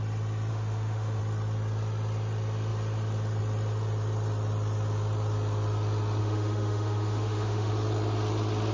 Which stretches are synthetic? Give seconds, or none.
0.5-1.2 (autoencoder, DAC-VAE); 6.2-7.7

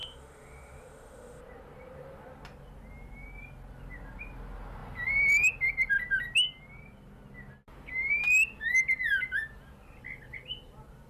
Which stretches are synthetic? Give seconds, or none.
0.0-1.4 (autoencoder, DAC-VAE)

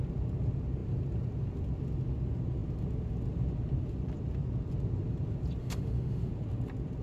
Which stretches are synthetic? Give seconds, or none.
5.6-6.3 (autoencoder, DAC-VAE)

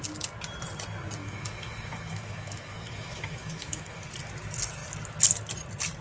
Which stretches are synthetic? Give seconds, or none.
1.2-4.0 (autoencoder, DAC-VAE)

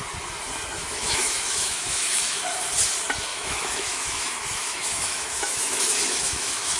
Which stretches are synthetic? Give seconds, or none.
0.8-2.4 (autoencoder, DAC-VAE); 3.3-6.8